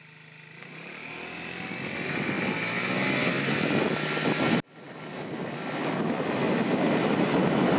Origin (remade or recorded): recorded